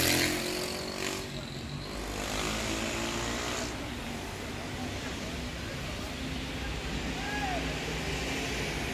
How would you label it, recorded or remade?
recorded